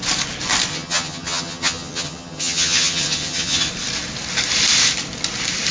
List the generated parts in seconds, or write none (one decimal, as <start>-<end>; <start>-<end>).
0.7-3.7